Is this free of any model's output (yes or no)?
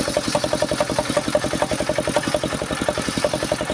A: yes